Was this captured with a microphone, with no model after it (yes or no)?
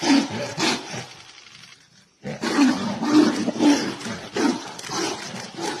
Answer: yes